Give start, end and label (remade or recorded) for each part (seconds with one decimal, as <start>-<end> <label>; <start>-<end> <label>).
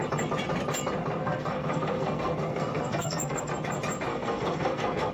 0.0-1.2 recorded; 1.2-3.5 remade; 3.5-4.1 recorded; 4.1-5.1 remade